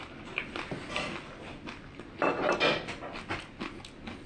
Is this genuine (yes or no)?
yes